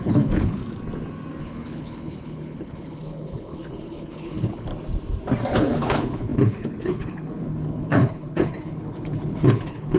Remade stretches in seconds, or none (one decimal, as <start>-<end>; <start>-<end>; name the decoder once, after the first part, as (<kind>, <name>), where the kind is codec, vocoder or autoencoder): 0.0-0.6 (codec, HILCodec); 1.4-4.7; 5.5-10.0